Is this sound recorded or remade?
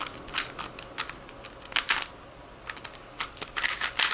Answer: recorded